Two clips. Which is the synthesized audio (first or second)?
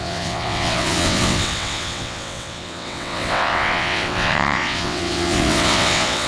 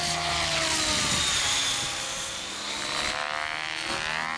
first